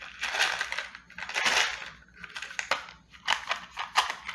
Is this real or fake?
real